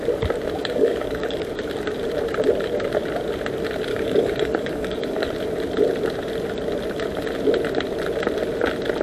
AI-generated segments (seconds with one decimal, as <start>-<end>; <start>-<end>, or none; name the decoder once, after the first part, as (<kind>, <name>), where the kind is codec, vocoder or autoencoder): 0.6-1.6 (codec, DAC); 3.9-5.3